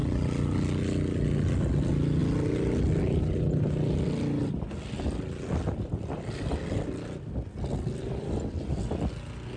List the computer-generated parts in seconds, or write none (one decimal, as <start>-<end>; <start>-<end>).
none